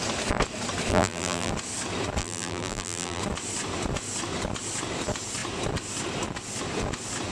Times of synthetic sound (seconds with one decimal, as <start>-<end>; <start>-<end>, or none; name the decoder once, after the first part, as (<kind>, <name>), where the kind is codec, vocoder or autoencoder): 0.9-1.5 (vocoder, BigVGAN v2); 2.2-3.2